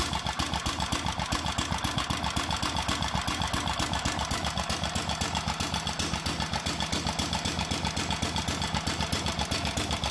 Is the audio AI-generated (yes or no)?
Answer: no